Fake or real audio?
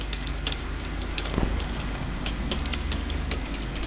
fake